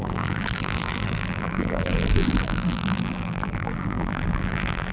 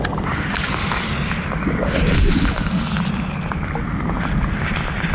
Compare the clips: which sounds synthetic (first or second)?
first